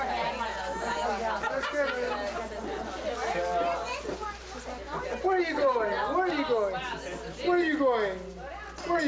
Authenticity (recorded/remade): recorded